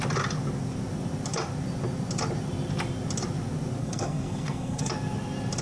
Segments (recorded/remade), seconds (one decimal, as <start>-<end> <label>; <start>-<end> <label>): 0.0-3.8 recorded; 3.8-4.9 remade; 4.9-5.6 recorded